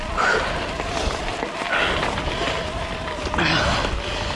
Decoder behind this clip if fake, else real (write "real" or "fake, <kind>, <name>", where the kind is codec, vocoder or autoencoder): real